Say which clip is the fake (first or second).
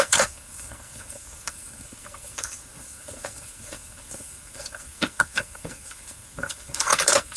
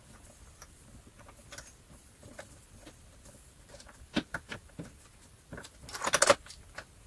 first